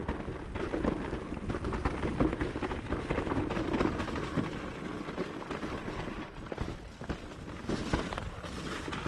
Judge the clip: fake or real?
real